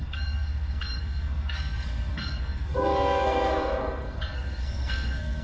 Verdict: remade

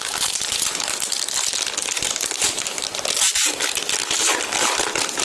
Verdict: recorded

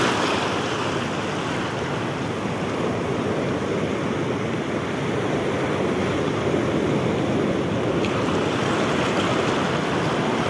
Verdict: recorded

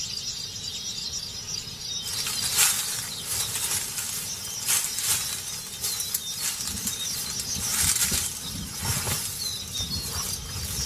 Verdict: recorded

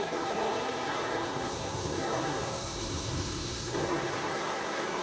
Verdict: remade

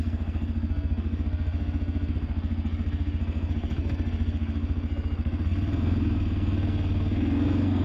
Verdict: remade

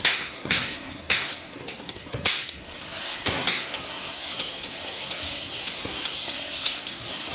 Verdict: remade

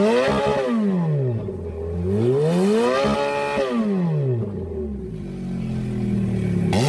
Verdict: recorded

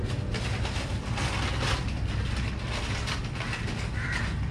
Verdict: recorded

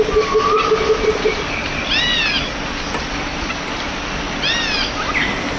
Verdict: recorded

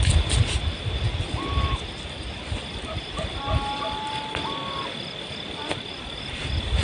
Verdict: recorded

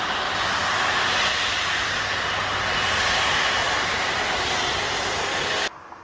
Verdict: recorded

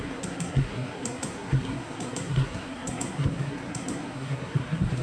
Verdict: remade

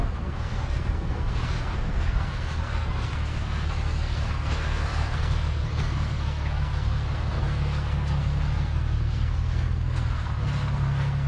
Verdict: remade